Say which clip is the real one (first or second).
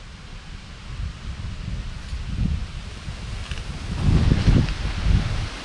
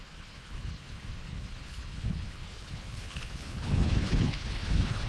first